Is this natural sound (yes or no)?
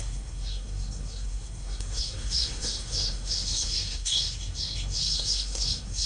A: no